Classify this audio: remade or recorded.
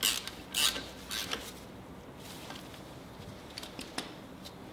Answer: recorded